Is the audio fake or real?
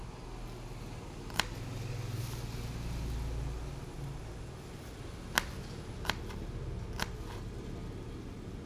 real